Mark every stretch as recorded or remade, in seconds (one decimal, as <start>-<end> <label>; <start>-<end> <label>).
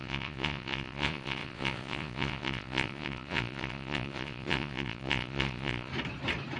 0.0-5.9 remade; 5.9-6.6 recorded